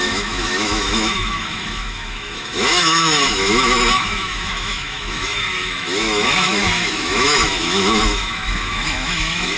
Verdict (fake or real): fake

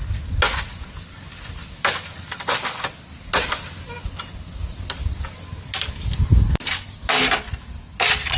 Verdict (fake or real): real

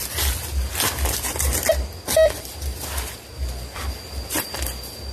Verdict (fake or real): real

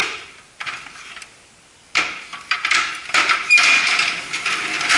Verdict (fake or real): real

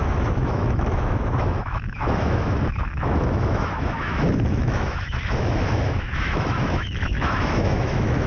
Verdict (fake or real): fake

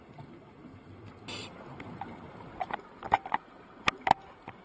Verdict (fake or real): real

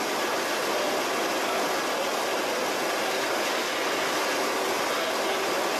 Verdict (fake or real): real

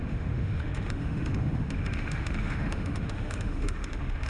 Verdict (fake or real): fake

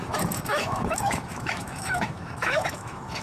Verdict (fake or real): fake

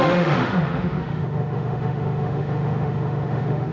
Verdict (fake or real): fake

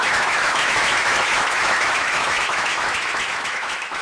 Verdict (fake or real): fake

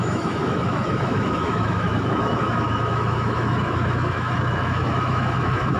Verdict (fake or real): fake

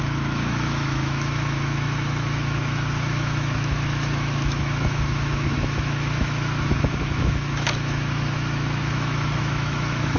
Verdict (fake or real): fake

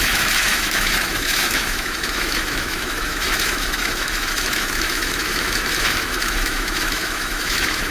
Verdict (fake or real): fake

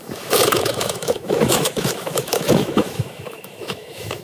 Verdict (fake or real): fake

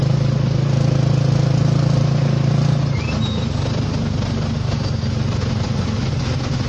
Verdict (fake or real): real